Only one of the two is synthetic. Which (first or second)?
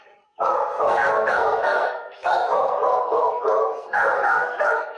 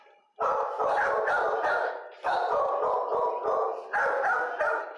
first